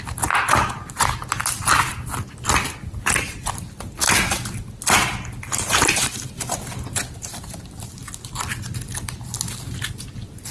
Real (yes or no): yes